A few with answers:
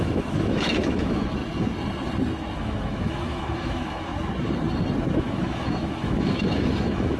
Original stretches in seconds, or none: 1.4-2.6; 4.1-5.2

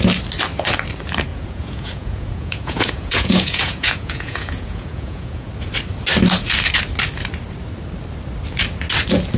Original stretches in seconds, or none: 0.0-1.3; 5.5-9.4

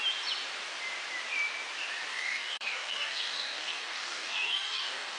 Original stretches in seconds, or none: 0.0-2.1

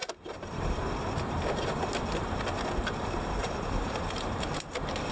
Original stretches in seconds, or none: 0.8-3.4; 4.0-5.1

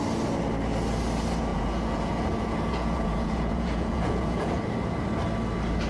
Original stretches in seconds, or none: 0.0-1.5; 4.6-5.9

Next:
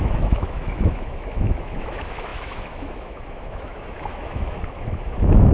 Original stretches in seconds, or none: none

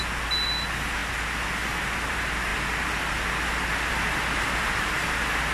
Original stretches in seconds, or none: 0.0-5.5

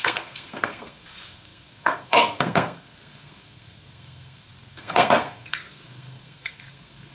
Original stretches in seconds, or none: none